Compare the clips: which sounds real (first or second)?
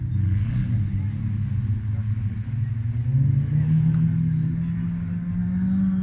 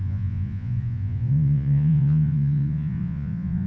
first